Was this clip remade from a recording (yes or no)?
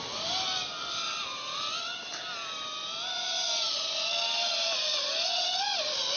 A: no